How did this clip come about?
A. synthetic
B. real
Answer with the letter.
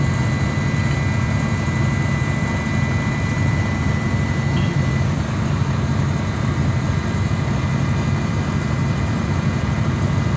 B